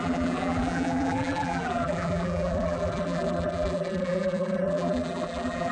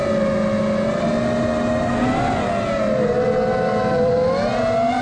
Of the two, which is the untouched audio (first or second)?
second